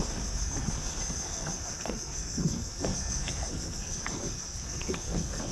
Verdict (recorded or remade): remade